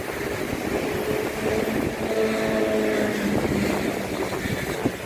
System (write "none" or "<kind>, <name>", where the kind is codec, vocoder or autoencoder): none